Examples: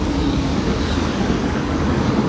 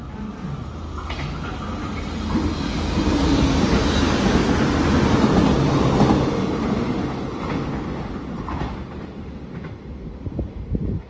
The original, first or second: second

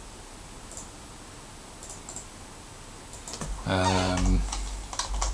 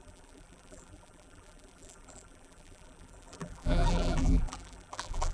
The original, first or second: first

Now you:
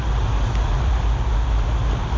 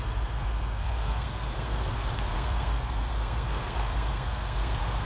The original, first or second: first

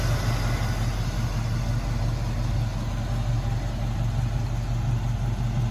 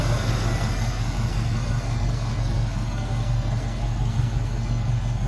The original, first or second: first